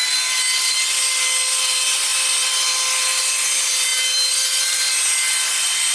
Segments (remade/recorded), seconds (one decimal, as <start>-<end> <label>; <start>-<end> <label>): 0.0-5.9 recorded